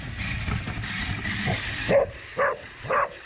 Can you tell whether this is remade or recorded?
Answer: recorded